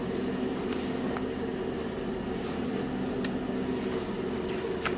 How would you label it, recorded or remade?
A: recorded